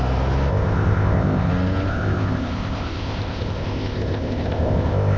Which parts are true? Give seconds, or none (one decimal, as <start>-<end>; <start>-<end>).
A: 0.0-0.5; 1.5-1.9